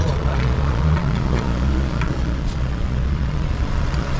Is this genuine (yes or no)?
no